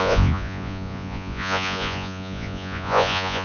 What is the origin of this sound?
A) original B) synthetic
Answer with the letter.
B